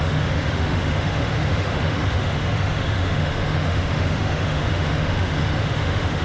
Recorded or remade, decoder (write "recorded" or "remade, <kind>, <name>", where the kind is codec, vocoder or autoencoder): remade, autoencoder, DAC-VAE